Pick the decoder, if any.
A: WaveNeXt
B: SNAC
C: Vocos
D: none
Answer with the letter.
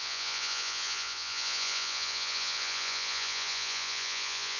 C